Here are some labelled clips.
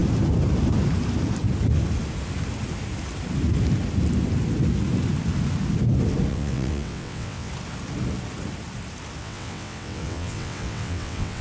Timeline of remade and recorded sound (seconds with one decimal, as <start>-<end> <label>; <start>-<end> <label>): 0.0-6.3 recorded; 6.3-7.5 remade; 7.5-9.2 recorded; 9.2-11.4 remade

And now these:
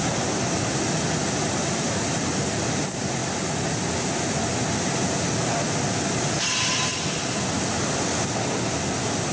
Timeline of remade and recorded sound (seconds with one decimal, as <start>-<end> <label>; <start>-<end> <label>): 0.0-9.3 recorded

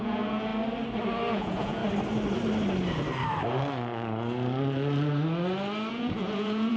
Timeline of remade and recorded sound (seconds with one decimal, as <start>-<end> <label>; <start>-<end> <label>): 0.0-0.5 remade; 0.5-1.3 recorded; 1.3-1.8 remade; 1.8-5.9 recorded; 5.9-6.8 remade

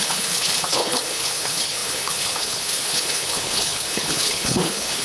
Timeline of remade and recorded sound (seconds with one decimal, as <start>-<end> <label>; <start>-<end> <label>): 0.0-5.0 remade